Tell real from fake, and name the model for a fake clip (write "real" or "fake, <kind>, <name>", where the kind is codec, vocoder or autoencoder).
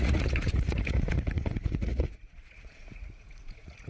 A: fake, vocoder, Vocos